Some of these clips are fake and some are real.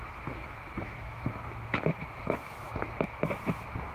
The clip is fake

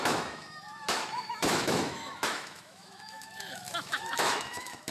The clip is fake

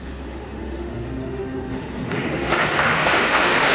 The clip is fake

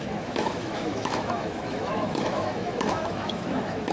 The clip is fake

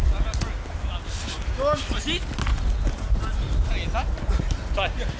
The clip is real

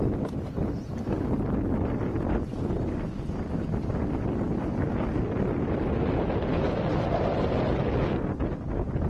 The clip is real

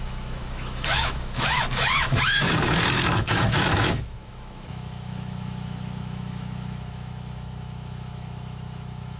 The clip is fake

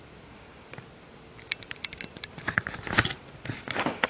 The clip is real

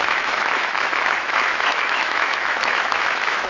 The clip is fake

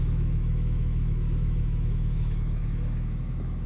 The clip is fake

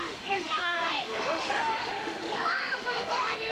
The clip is fake